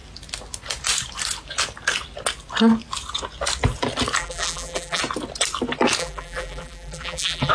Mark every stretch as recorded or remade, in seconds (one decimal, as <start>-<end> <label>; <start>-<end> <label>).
0.0-4.2 recorded; 4.2-5.0 remade; 5.0-6.0 recorded; 6.0-7.5 remade

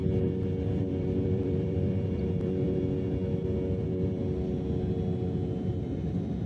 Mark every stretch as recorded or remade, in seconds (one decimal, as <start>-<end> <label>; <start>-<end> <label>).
0.0-0.7 recorded; 0.7-2.8 remade; 2.8-5.7 recorded; 5.7-6.5 remade